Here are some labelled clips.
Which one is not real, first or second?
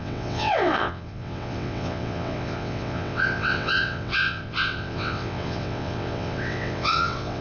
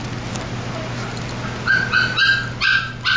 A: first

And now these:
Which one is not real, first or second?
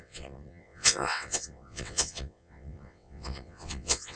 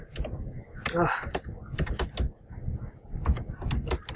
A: first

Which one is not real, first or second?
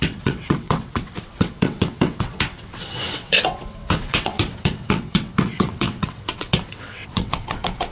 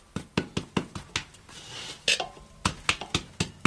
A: first